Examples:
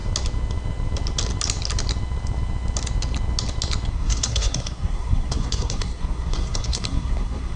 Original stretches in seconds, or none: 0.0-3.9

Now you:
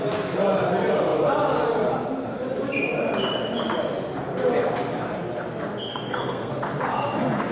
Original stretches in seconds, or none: 0.0-5.9; 6.5-7.5

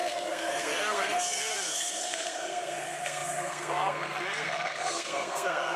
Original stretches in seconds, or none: none

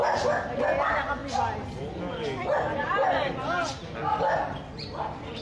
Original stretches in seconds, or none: 0.0-5.4

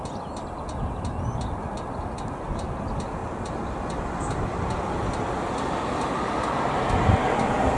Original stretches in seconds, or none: 0.0-7.8

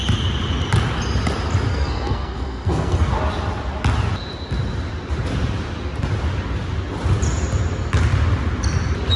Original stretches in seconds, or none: 0.0-1.7; 3.1-9.2